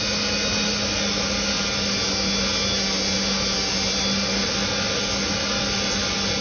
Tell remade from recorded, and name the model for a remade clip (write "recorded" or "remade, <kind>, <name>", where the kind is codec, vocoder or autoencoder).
recorded